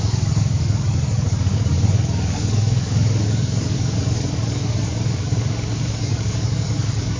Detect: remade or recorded remade